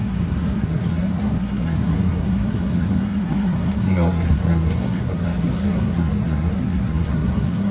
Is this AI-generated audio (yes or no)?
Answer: yes